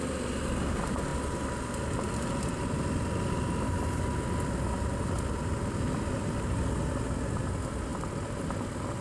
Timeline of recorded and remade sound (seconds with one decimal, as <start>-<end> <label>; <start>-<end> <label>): 0.0-9.0 recorded